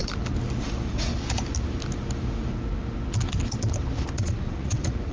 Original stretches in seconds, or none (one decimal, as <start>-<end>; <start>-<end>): 0.0-0.6; 1.1-4.2